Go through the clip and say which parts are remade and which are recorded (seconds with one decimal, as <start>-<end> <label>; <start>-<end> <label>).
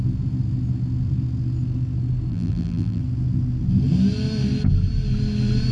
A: 0.0-2.3 recorded; 2.3-3.0 remade; 3.0-5.7 recorded